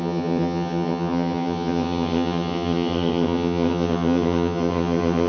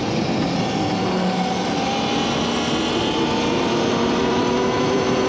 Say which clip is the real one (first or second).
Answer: second